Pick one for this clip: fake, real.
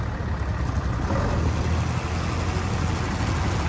real